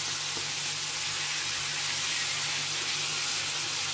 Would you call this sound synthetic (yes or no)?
no